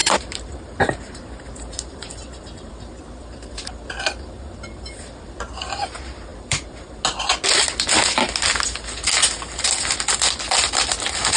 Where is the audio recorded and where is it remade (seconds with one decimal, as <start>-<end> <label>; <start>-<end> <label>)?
0.0-2.7 remade; 2.7-6.3 recorded; 6.3-7.0 remade; 7.0-11.4 recorded